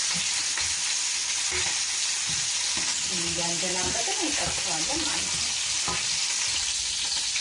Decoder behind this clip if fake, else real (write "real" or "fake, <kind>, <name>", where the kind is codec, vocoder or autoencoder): real